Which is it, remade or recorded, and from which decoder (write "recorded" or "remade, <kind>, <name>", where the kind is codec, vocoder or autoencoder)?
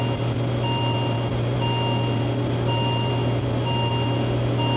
recorded